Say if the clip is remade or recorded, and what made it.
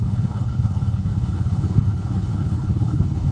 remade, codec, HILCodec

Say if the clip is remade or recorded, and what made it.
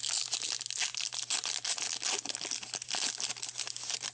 recorded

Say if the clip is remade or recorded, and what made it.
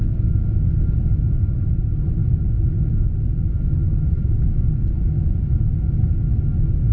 recorded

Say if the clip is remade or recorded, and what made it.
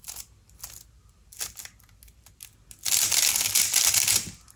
recorded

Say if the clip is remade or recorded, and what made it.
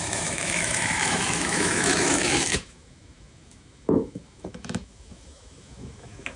remade, autoencoder, DAC-VAE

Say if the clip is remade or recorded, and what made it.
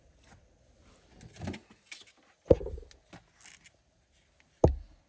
recorded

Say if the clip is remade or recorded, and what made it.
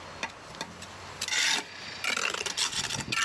recorded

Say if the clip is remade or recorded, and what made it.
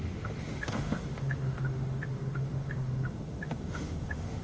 remade, autoencoder, DAC-VAE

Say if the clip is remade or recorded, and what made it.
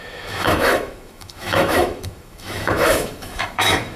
remade, autoencoder, DAC-VAE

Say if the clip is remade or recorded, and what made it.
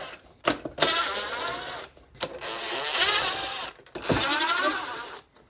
recorded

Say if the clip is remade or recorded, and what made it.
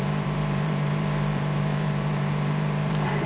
remade, vocoder, BigVGAN v2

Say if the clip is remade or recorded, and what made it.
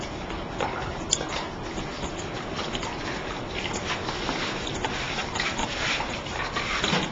recorded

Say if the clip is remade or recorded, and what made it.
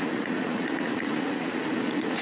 remade, vocoder, Vocos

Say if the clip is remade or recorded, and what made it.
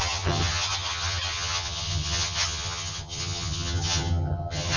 remade, vocoder, HiFi-GAN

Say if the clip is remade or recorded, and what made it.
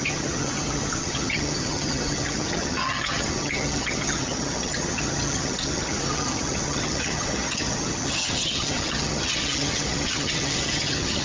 remade, vocoder, HiFi-GAN